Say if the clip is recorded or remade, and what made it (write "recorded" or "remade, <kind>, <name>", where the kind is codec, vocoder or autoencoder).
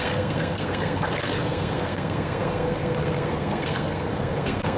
remade, codec, SNAC